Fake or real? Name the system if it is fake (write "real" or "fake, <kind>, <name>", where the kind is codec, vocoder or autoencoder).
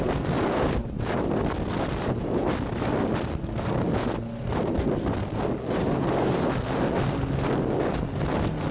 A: real